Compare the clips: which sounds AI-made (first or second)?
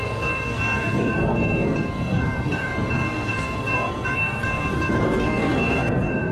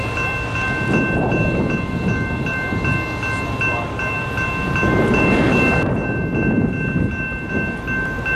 first